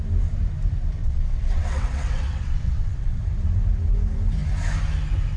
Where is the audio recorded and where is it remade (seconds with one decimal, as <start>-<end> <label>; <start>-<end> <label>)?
0.0-1.0 recorded; 1.0-3.2 remade; 3.2-5.4 recorded